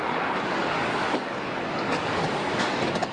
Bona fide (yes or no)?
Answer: no